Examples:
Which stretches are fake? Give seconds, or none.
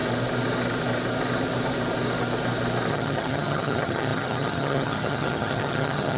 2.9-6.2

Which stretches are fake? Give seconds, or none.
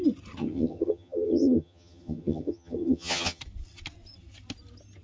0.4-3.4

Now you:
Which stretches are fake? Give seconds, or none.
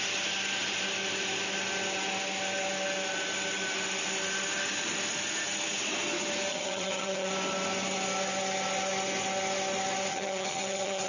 6.5-7.3; 10.1-11.1